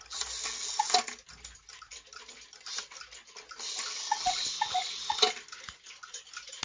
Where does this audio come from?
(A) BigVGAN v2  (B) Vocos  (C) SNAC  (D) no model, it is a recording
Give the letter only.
D